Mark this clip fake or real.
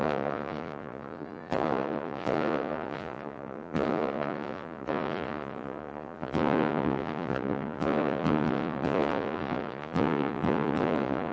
fake